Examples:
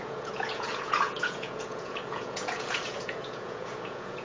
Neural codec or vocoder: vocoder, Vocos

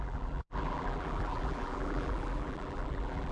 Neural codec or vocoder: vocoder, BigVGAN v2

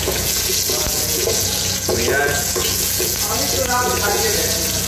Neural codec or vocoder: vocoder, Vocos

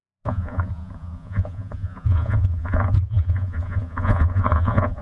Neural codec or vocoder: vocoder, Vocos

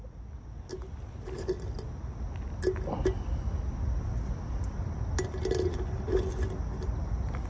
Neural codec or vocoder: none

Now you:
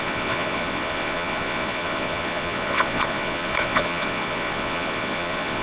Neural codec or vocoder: vocoder, Vocos